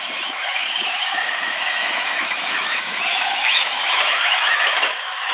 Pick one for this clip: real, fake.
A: fake